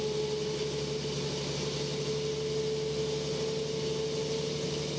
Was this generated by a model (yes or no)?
no